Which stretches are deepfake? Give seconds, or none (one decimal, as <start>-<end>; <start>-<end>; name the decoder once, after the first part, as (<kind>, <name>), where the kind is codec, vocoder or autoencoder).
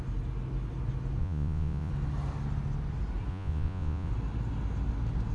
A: 1.2-1.9 (vocoder, Vocos); 3.3-4.1